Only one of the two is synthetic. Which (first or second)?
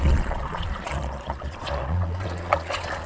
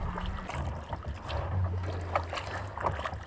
first